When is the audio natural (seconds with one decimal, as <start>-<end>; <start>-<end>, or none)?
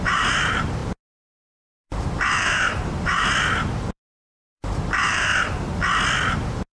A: 5.3-6.3